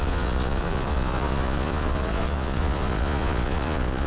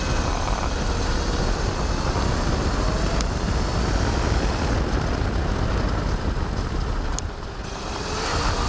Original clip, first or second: second